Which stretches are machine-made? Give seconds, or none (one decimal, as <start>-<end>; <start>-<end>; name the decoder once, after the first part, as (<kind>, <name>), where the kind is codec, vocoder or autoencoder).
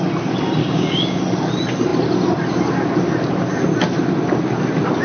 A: 0.6-1.2 (codec, DAC)